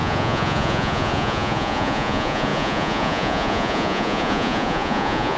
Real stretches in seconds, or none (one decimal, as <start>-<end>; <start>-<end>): none